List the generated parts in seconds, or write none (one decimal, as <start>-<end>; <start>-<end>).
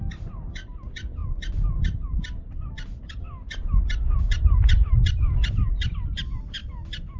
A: none